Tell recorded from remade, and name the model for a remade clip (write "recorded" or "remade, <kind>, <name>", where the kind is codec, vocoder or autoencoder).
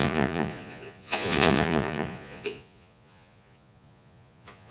remade, vocoder, Vocos